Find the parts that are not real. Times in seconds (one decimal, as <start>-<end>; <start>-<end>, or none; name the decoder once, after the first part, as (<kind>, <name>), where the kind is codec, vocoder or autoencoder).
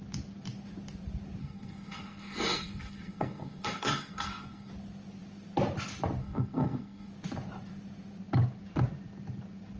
1.4-4.7 (codec, SNAC); 6.2-7.1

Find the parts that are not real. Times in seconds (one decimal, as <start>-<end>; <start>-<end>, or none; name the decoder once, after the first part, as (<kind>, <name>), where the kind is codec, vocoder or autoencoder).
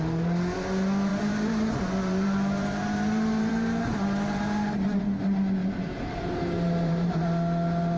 1.1-5.0 (vocoder, BigVGAN v2); 5.6-7.1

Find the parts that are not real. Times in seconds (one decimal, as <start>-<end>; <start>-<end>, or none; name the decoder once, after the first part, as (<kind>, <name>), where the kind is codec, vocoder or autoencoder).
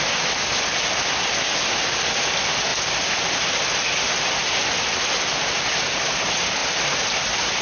0.7-1.4 (vocoder, BigVGAN v2); 2.7-3.3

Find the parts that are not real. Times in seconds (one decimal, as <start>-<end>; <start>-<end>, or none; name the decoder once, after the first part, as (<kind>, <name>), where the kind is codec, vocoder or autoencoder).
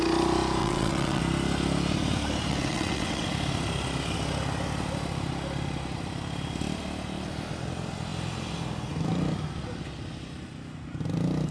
0.6-1.2 (vocoder, WaveNeXt); 2.5-3.3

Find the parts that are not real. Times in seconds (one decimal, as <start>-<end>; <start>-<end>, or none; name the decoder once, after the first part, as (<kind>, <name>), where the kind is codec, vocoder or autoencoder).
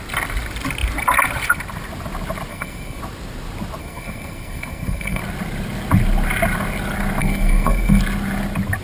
2.5-3.0 (codec, SNAC); 3.8-5.2; 7.2-8.0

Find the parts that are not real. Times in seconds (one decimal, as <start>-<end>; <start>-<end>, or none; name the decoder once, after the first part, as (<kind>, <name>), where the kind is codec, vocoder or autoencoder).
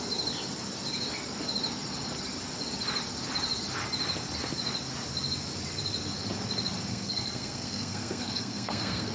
6.9-9.1 (codec, SNAC)